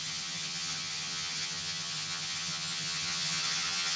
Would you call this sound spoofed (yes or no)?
yes